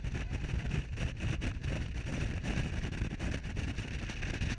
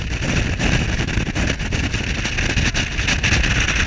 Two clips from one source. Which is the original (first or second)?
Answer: second